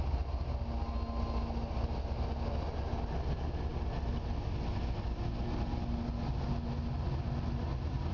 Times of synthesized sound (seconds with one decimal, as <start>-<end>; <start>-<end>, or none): none